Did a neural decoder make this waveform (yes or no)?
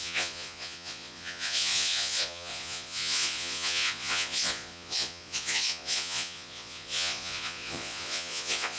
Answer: yes